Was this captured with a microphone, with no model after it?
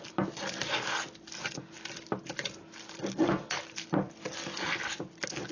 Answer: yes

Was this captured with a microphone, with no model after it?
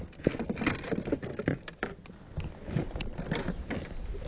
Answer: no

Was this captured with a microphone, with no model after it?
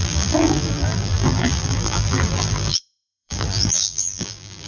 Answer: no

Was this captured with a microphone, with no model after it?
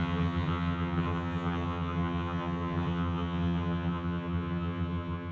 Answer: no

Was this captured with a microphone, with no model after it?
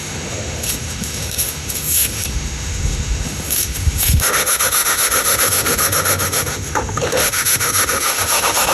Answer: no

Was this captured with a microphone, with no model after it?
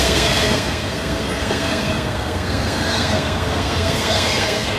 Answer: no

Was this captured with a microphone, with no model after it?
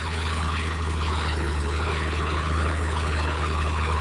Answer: no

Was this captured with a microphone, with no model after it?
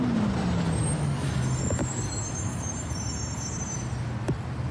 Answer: yes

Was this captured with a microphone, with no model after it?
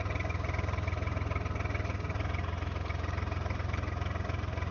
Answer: yes